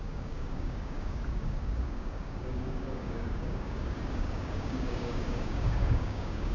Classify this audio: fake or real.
fake